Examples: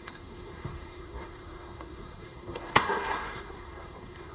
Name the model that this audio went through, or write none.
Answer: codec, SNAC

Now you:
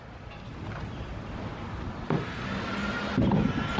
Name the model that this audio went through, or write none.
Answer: none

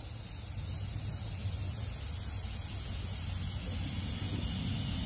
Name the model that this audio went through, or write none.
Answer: none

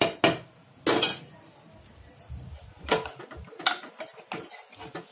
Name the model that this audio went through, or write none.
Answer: none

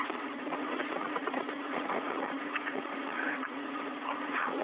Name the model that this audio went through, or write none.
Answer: vocoder, Vocos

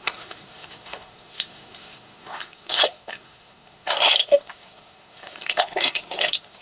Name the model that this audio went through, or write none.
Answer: codec, SNAC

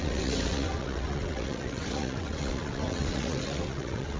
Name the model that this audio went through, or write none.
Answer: vocoder, WaveNeXt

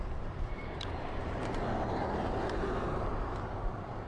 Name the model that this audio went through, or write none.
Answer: vocoder, BigVGAN v2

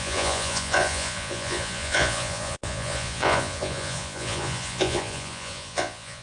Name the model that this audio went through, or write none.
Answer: vocoder, Vocos